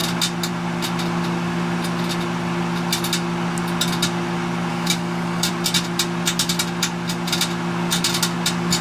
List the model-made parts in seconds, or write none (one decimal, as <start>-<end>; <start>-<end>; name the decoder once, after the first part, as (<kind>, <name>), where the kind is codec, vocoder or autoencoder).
4.7-5.5 (codec, DAC)